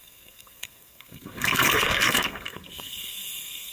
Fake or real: fake